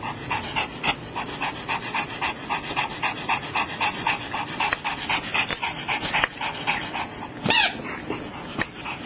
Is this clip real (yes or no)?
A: yes